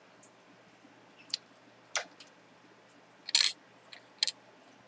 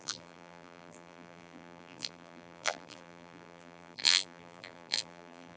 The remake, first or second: second